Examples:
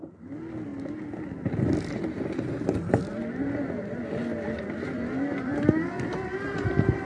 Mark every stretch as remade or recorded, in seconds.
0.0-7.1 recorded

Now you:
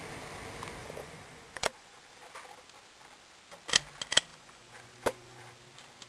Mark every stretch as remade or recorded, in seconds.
0.0-0.8 recorded; 0.8-2.0 remade; 2.0-4.3 recorded; 4.3-5.4 remade; 5.4-6.1 recorded

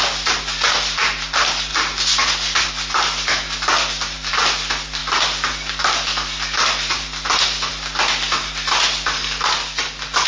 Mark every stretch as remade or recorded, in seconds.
0.0-10.3 recorded

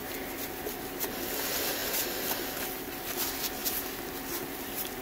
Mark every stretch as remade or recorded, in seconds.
0.0-5.0 recorded

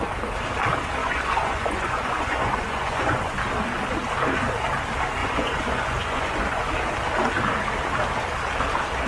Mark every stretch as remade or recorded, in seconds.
0.0-1.0 recorded; 1.0-3.4 remade; 3.4-5.2 recorded; 5.2-6.7 remade; 6.7-9.1 recorded

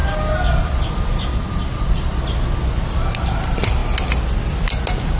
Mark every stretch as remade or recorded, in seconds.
0.0-1.3 recorded; 1.3-2.2 remade; 2.2-5.2 recorded

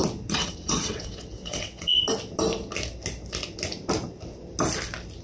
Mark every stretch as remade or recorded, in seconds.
0.0-0.4 recorded; 0.4-2.0 remade; 2.0-5.2 recorded